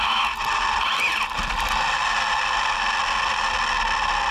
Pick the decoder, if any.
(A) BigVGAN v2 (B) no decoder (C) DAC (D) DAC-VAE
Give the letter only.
B